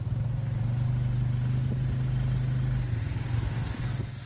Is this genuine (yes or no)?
yes